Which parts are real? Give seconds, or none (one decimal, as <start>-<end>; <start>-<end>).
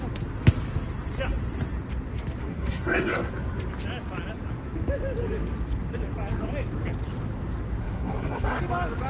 0.0-2.4; 3.3-7.8; 8.6-9.1